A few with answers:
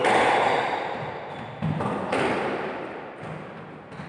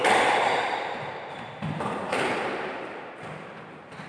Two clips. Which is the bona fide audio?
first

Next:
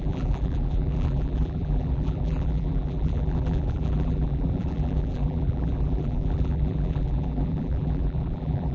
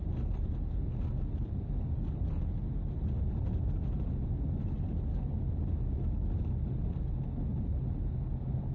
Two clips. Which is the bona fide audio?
second